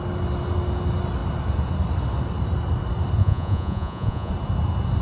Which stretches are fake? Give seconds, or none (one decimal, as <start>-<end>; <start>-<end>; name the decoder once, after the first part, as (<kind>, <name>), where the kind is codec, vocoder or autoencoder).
3.2-4.3 (vocoder, Vocos)